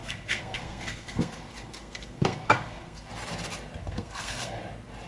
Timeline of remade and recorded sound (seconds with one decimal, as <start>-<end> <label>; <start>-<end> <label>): 0.0-3.1 remade; 3.1-3.8 recorded; 3.8-4.6 remade; 4.6-5.1 recorded